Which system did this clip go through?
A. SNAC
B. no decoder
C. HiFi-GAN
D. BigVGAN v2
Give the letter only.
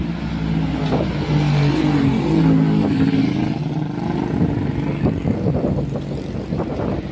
B